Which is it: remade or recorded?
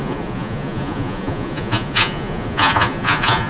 remade